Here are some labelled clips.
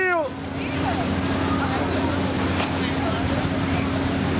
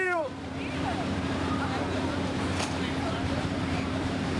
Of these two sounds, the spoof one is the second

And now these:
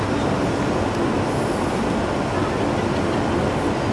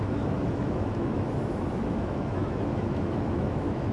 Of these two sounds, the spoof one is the second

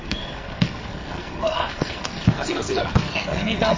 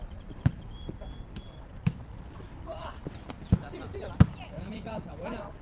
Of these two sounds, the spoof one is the first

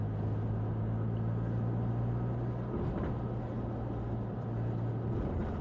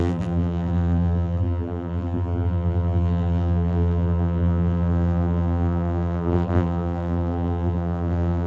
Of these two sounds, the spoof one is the second